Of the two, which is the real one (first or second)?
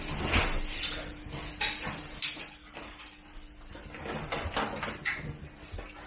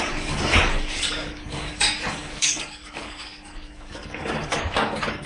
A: first